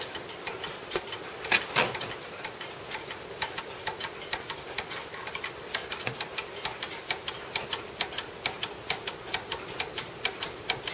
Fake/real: real